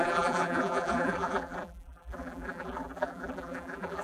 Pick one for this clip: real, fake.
fake